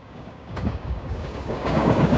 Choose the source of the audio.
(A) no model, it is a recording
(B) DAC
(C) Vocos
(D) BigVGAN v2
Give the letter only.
B